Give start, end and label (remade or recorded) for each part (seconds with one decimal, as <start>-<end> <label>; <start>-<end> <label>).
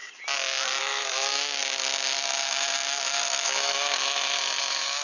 0.0-0.8 recorded; 0.8-5.0 remade